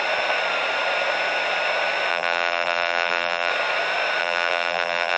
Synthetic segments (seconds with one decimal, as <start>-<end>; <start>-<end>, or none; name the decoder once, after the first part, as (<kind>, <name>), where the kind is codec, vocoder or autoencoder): 2.1-3.5 (vocoder, BigVGAN v2); 4.2-5.2